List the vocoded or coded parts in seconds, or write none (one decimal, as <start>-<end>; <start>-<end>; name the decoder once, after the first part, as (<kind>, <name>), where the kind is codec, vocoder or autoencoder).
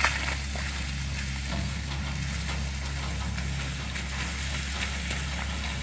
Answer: 1.5-2.0 (codec, SNAC)